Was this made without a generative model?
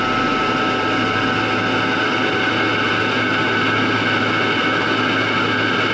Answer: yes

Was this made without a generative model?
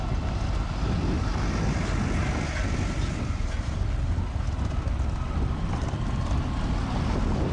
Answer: yes